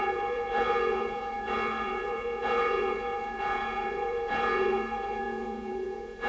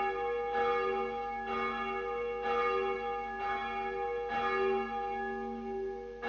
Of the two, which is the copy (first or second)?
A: first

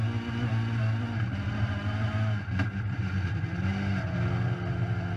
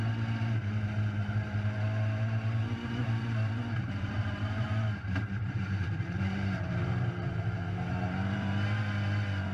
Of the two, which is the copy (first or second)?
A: second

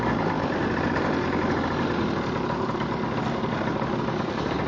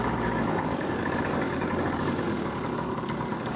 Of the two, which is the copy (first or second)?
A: second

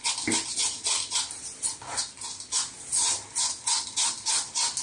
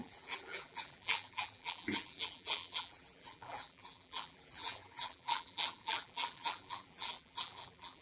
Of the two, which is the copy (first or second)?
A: second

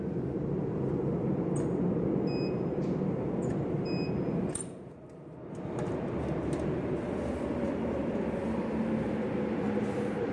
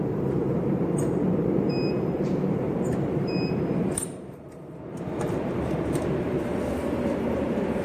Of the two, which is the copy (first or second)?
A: second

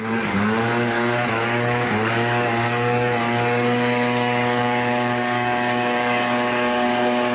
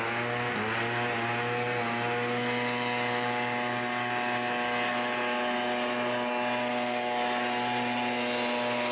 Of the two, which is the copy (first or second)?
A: first